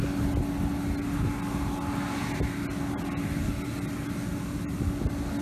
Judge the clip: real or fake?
real